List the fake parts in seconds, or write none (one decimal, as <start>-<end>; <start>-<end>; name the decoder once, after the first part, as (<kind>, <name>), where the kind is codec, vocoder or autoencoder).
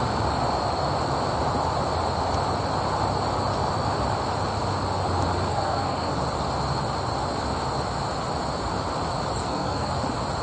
5.5-6.1 (codec, SNAC); 9.4-9.9